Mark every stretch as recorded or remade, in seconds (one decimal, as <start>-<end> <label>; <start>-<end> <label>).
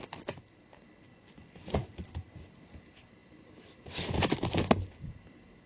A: 0.0-1.1 recorded; 1.1-1.7 remade; 1.7-5.7 recorded